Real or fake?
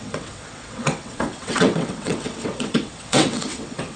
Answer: fake